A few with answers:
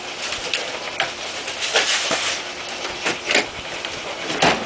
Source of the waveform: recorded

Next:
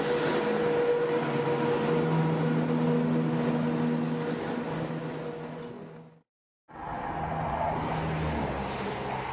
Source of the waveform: recorded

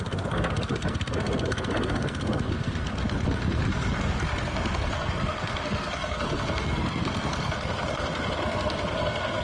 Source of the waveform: remade